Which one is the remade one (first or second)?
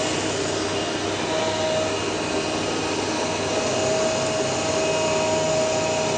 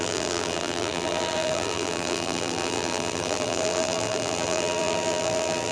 second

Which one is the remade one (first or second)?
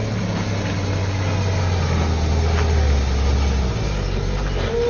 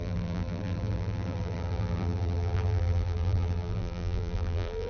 second